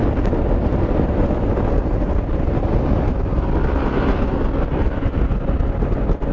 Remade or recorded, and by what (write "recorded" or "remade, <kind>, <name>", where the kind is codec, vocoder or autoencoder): recorded